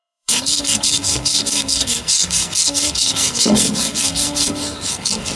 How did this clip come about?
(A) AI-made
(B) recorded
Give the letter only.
A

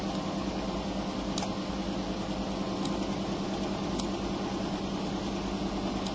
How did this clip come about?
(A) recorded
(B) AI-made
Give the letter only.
A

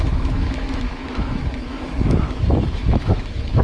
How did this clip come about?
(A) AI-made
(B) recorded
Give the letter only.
A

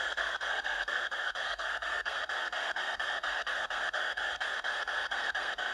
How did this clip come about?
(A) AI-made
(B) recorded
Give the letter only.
A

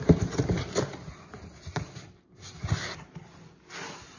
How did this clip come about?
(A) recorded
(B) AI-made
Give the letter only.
A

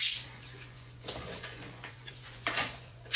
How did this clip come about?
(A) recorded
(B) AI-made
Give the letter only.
B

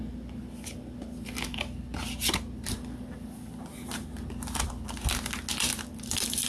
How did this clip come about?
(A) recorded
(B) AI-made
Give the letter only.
A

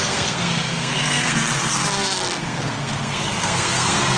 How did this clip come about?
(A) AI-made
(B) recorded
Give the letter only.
A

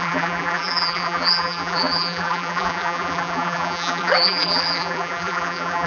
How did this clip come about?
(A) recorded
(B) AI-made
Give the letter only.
B